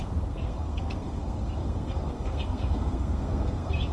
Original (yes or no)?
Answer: no